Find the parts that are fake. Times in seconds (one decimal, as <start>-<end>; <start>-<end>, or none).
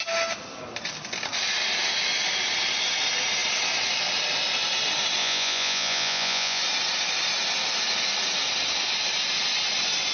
5.2-6.6